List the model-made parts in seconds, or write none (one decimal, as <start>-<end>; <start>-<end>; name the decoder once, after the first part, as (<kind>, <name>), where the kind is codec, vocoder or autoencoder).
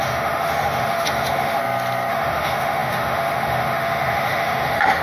0.0-1.6 (autoencoder, DAC-VAE); 2.1-5.0